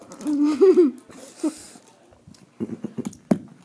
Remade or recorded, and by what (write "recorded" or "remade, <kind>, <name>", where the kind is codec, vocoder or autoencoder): recorded